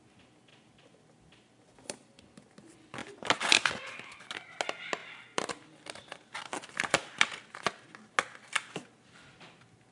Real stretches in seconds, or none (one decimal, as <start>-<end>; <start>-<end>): 0.0-3.0; 3.6-5.0; 7.4-9.9